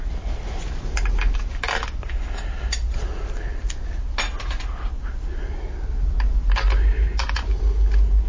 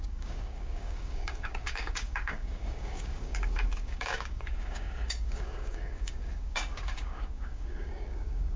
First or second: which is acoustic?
first